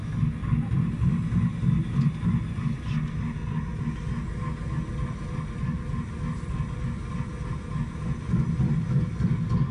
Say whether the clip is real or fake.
real